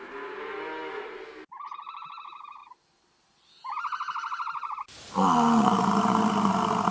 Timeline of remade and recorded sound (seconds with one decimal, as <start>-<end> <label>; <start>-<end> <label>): 0.0-6.9 recorded